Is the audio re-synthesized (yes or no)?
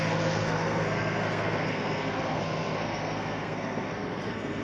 yes